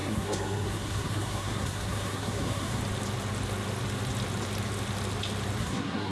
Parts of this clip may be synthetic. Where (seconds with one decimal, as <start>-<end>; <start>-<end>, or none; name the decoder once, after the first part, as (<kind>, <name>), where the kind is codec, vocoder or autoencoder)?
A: 0.0-2.8 (codec, SNAC); 5.6-6.1